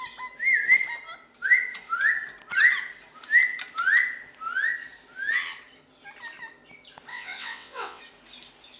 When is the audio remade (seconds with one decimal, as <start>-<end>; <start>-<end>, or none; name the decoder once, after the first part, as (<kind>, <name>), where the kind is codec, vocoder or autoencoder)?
7.1-8.0 (vocoder, WaveNeXt)